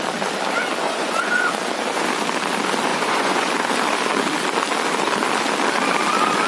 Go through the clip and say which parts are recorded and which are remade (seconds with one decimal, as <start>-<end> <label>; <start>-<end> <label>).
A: 0.0-0.8 recorded; 0.8-1.5 remade; 1.5-2.9 recorded; 2.9-3.5 remade; 3.5-6.5 recorded